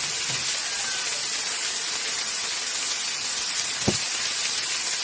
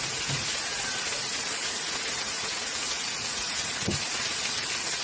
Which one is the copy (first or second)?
second